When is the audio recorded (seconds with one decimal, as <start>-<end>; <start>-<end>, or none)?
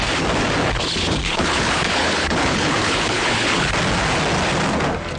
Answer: 0.0-0.6; 3.7-5.2